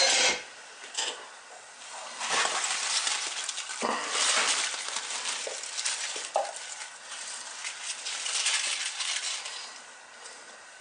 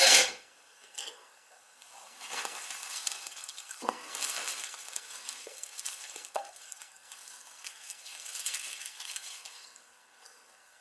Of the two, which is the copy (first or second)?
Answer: second